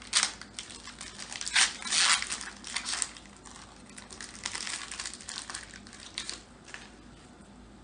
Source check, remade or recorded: recorded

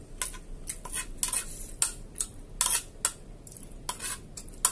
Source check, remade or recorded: recorded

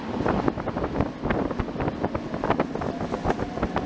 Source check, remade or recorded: recorded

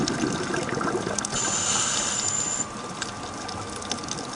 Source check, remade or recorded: recorded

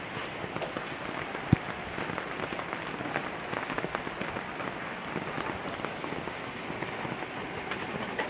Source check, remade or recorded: recorded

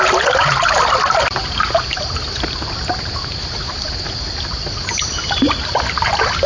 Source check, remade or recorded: recorded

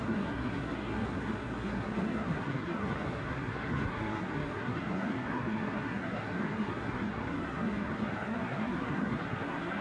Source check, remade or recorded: remade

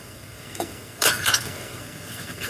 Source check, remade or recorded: remade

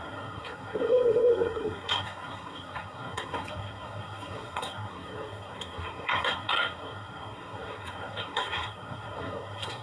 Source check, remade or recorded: remade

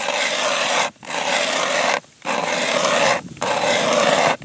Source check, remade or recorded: recorded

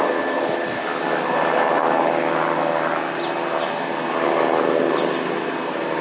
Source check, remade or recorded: recorded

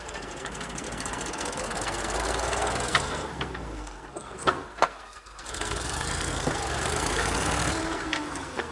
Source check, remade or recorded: remade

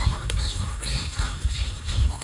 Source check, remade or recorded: remade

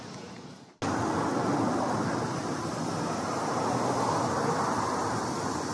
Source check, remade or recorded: recorded